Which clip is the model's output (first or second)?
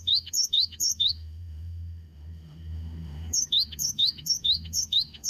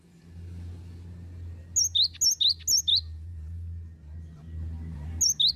first